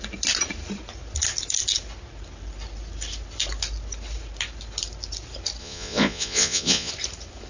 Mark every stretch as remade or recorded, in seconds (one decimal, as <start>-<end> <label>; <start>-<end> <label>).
0.0-5.6 recorded; 5.6-6.9 remade; 6.9-7.5 recorded